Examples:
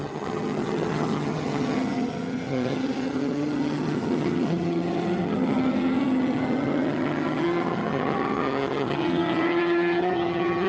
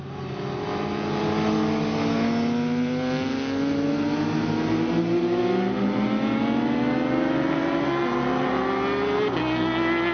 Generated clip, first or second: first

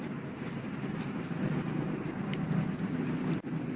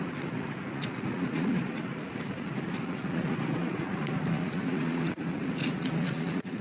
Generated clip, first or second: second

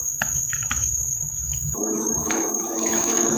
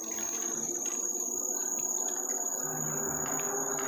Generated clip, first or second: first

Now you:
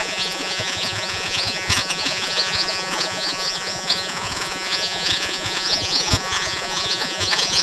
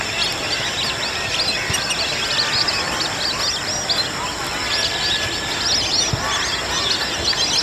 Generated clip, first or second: first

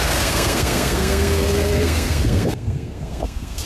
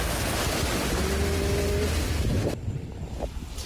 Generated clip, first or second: first